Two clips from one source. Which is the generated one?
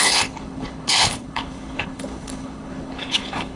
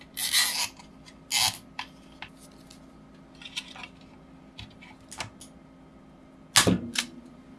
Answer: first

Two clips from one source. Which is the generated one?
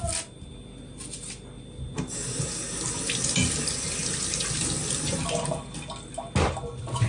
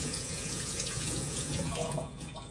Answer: second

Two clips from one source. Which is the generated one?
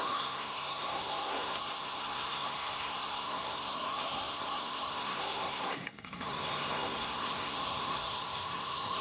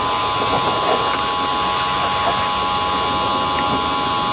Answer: first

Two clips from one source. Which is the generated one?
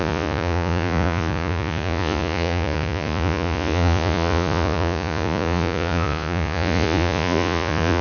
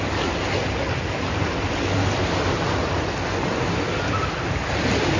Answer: first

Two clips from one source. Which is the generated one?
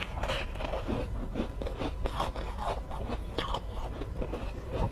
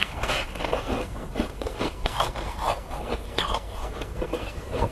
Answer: second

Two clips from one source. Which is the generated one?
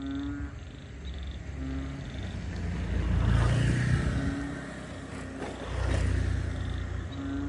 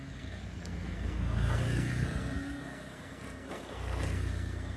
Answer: second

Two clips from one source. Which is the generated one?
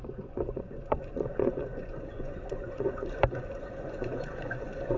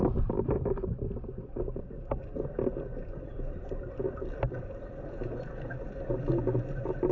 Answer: first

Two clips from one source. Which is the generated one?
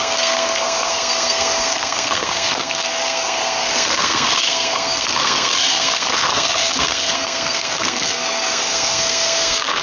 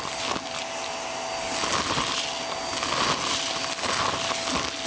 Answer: first